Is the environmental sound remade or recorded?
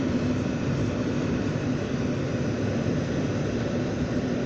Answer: recorded